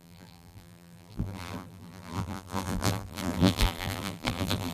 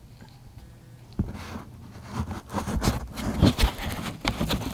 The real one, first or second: second